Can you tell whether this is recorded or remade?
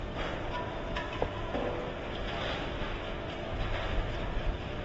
recorded